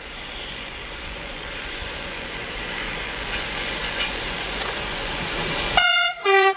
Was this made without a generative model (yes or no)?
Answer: no